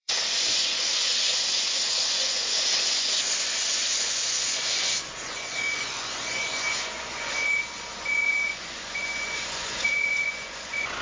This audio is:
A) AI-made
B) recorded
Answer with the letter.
A